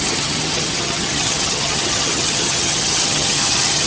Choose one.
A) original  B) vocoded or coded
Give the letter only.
B